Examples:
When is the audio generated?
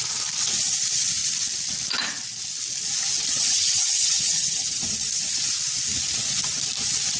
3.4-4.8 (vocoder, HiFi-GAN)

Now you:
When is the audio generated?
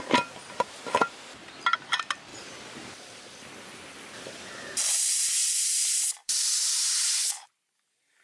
5.4-7.5 (vocoder, BigVGAN v2)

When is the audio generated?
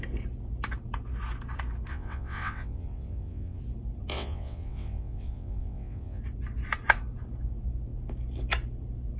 1.9-3.6 (vocoder, WaveNeXt); 4.1-6.2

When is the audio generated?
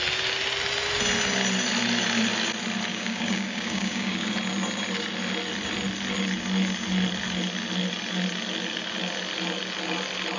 2.9-4.3 (codec, DAC)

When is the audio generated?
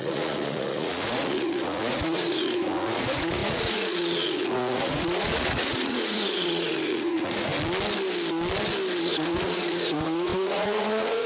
0.0-7.5 (vocoder, Vocos); 9.0-11.3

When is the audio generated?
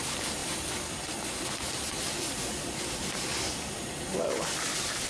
0.0-5.1 (vocoder, BigVGAN v2)